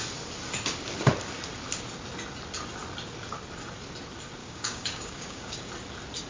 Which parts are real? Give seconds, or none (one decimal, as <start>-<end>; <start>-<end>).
0.0-4.4; 5.7-6.3